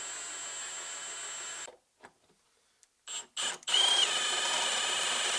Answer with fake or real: real